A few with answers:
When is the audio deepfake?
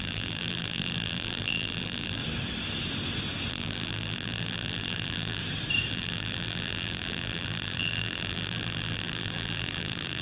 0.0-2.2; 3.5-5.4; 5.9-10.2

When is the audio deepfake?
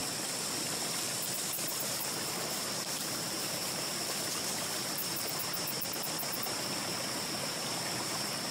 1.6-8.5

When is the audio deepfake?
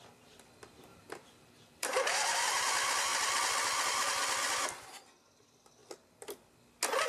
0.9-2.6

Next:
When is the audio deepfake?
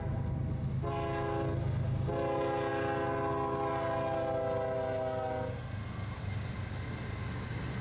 none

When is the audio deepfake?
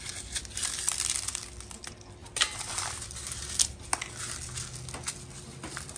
2.2-3.4